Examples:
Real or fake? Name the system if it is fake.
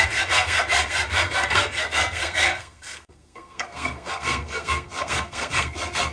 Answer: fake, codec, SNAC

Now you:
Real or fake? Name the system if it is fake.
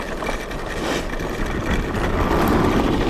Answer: real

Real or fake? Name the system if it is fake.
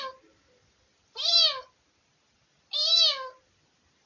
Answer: real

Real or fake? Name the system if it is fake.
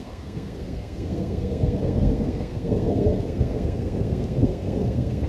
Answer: fake, codec, SNAC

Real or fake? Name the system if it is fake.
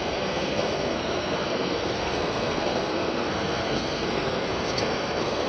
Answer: fake, codec, SNAC